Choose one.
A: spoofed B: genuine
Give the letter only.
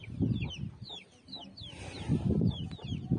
B